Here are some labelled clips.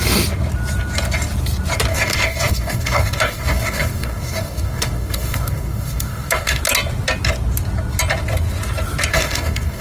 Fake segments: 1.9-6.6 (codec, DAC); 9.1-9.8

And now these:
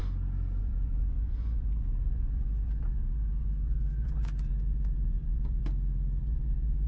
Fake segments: 0.6-5.6 (vocoder, Vocos); 6.2-6.9

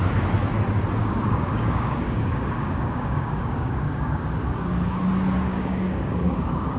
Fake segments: 1.0-5.1 (codec, DAC); 5.5-6.8

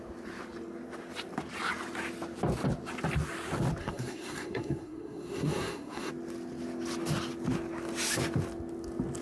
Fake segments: 3.8-6.1 (codec, SNAC)

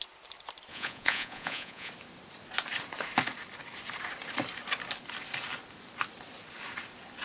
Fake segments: 0.7-1.9 (vocoder, Vocos)

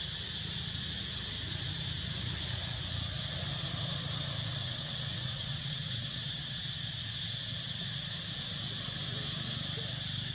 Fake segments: 4.5-6.6 (vocoder, WaveNeXt)